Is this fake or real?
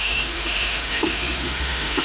fake